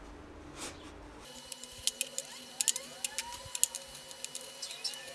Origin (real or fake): real